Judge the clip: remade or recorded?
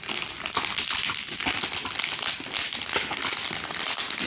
recorded